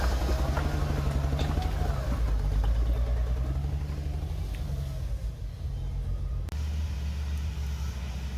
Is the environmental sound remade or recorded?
recorded